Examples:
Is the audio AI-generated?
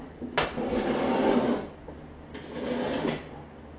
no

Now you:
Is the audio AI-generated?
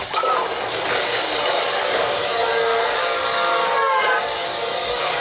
yes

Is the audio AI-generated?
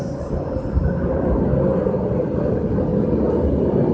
no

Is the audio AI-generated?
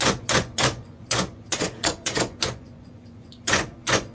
yes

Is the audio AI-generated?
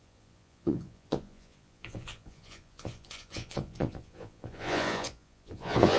yes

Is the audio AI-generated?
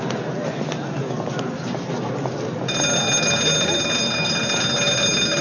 no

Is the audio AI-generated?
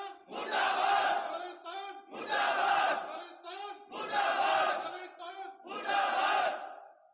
no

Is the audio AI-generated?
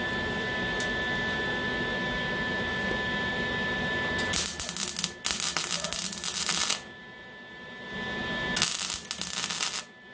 no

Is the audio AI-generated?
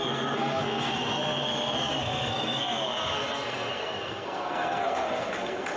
yes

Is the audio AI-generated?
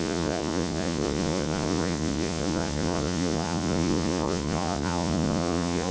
yes